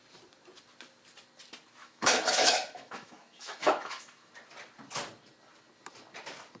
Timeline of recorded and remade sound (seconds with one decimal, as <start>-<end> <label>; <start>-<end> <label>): 0.0-1.8 recorded; 1.8-4.3 remade; 4.3-6.6 recorded